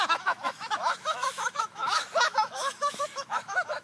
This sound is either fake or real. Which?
fake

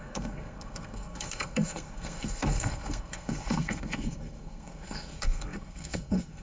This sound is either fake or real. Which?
fake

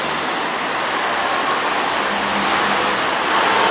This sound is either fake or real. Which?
real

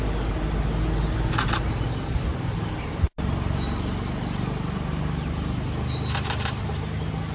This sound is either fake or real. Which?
real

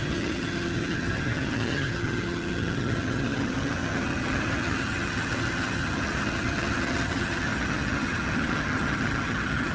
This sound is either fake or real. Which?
fake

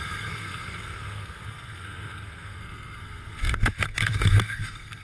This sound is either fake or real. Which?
fake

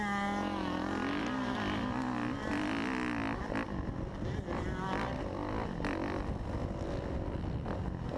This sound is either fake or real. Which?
real